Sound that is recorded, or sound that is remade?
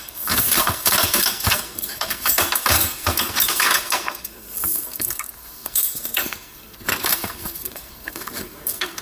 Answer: remade